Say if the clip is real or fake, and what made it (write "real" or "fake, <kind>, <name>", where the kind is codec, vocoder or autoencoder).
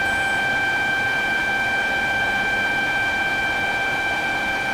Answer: real